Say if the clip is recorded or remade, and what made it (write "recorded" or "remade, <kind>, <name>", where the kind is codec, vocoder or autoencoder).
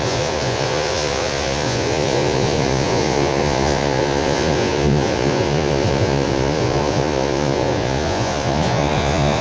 remade, vocoder, Vocos